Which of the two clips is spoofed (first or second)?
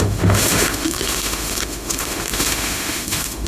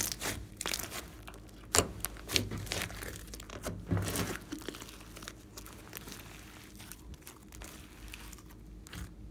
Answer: first